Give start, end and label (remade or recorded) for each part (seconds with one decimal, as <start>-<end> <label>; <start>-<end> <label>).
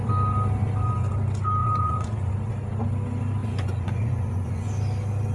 0.0-1.6 recorded; 1.6-2.3 remade; 2.3-3.4 recorded; 3.4-4.7 remade; 4.7-5.3 recorded